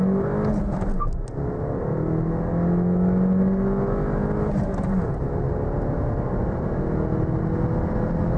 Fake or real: real